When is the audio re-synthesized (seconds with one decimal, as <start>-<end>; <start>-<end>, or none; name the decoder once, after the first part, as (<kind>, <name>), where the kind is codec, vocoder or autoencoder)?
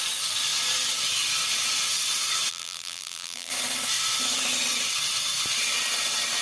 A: 2.5-3.5 (vocoder, BigVGAN v2)